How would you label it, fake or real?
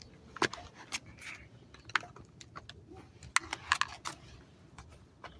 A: real